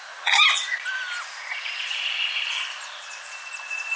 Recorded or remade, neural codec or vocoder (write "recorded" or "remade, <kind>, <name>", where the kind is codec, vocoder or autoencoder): recorded